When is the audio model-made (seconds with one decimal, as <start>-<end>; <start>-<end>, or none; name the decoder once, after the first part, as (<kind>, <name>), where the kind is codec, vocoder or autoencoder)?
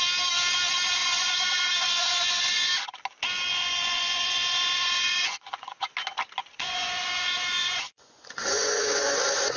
1.0-2.7 (vocoder, Vocos); 3.5-5.8; 6.4-9.6